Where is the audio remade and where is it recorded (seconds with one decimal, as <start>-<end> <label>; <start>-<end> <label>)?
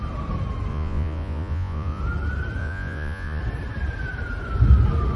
0.0-0.7 recorded; 0.7-2.0 remade; 2.0-2.6 recorded; 2.6-3.4 remade; 3.4-5.2 recorded